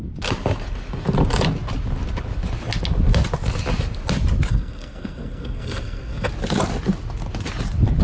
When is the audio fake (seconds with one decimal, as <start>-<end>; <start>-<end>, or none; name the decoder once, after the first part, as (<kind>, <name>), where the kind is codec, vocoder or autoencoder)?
4.5-6.3 (codec, SNAC)